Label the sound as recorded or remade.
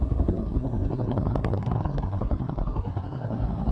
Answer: remade